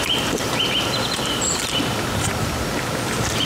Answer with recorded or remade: remade